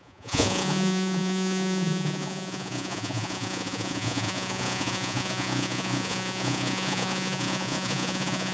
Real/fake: fake